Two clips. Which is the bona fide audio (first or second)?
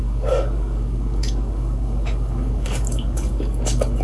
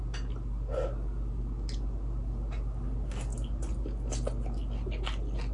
second